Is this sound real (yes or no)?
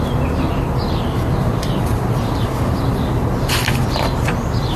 no